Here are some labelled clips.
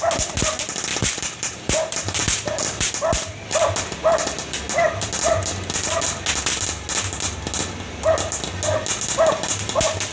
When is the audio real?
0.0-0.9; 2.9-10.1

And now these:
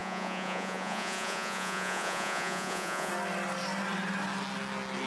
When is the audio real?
3.1-5.1

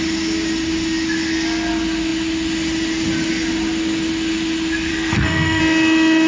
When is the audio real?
0.0-4.9; 5.6-6.3

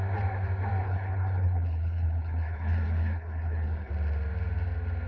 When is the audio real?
0.0-0.8; 3.9-5.1

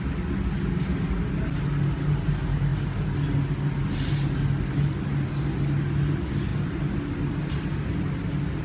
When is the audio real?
0.0-6.5; 7.0-8.6

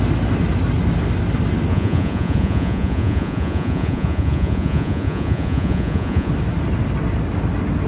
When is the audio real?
0.0-1.7; 6.3-7.9